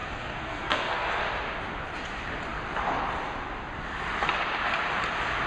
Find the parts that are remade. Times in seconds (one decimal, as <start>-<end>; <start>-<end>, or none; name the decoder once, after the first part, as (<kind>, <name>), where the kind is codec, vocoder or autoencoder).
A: 0.0-1.2 (codec, SNAC)